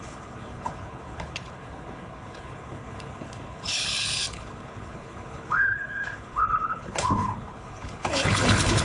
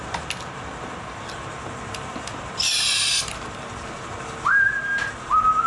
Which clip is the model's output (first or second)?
first